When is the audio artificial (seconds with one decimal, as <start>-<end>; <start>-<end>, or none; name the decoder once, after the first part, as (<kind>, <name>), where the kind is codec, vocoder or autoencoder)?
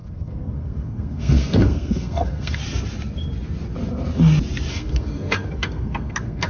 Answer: 0.0-2.6 (codec, SNAC); 4.7-6.5